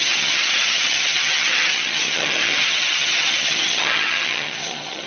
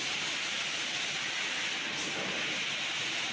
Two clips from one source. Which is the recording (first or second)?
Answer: second